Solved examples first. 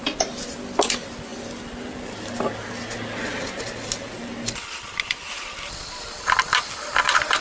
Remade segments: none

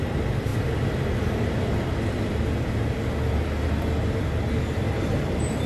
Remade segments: none

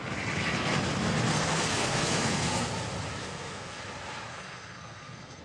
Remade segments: 1.3-2.7; 3.2-3.8; 4.3-5.4

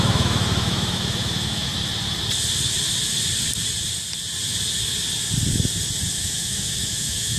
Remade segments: 0.0-1.7; 6.1-7.4

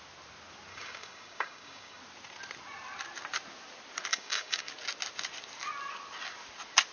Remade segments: 0.7-2.0; 4.1-4.7

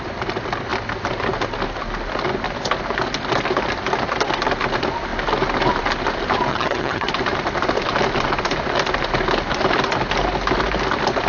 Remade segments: 6.5-7.1

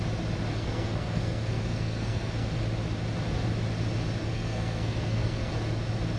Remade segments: 0.5-2.6; 4.2-5.5

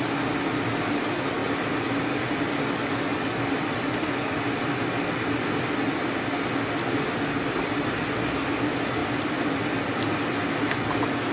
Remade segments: none